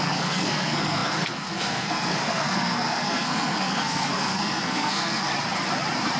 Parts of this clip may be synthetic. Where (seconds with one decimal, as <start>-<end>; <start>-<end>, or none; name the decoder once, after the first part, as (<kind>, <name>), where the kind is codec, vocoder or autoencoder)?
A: 0.0-5.3 (codec, SNAC)